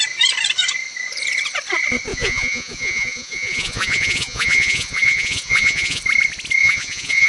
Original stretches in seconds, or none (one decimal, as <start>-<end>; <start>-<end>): 0.0-2.1; 6.0-6.6